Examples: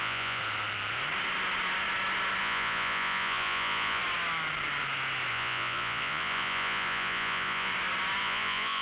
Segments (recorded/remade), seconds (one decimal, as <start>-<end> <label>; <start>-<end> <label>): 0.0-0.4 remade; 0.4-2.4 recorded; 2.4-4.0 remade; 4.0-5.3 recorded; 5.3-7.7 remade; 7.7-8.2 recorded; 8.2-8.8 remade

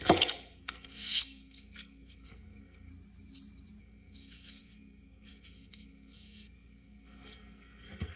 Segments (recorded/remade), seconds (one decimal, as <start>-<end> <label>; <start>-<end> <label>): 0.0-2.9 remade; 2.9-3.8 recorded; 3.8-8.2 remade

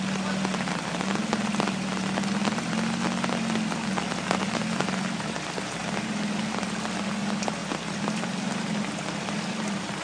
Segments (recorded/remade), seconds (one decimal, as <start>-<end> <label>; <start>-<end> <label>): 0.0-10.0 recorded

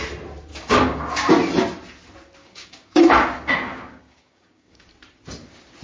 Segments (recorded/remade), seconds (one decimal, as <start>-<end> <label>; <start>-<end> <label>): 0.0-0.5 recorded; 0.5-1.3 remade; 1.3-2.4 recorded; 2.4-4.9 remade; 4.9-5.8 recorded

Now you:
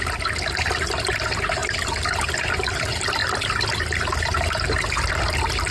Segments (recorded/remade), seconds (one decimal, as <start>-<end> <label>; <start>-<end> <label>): 0.0-5.7 recorded